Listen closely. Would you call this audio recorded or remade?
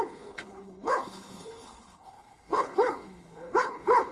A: remade